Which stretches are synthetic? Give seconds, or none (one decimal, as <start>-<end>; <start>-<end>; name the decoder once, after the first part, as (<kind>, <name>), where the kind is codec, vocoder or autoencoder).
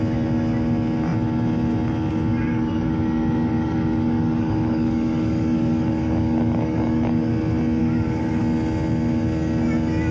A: 2.5-7.3 (codec, DAC); 7.8-8.4